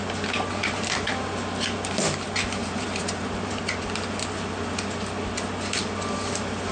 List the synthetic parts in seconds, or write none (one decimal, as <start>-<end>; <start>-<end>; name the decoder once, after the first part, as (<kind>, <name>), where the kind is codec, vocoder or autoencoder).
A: 0.6-1.1 (vocoder, BigVGAN v2); 2.6-3.6